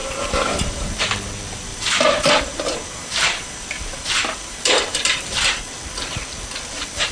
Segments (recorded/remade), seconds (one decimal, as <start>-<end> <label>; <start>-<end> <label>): 0.0-1.0 remade; 1.0-1.7 recorded; 1.7-5.6 remade; 5.6-7.1 recorded